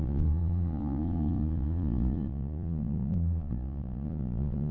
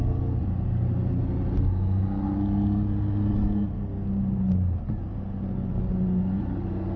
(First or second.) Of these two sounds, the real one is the second